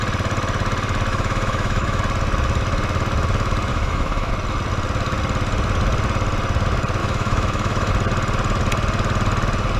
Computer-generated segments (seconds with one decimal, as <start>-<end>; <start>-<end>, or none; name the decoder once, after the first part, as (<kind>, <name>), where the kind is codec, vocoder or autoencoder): 1.1-2.0 (autoencoder, DAC-VAE); 3.7-4.3; 7.0-7.9